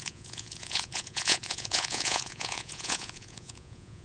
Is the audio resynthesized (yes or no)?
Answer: yes